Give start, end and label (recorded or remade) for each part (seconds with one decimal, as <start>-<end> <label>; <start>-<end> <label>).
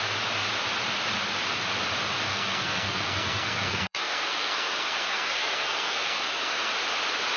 0.0-2.3 recorded; 2.3-6.7 remade; 6.7-7.4 recorded